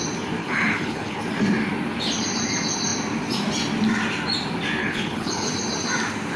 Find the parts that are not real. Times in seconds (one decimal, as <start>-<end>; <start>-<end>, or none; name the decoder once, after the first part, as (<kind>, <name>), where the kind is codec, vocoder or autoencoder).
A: 0.4-1.2 (codec, HILCodec); 4.8-5.5